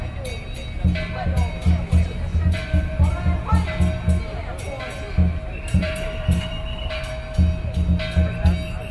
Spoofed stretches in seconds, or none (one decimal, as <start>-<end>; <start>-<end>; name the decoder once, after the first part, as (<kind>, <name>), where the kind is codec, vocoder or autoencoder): 2.3-2.9 (vocoder, BigVGAN v2); 5.7-7.1